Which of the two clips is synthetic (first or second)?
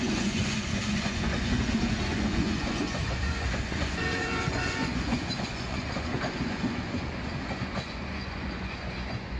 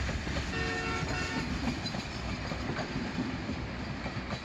first